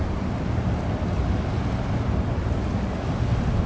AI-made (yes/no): no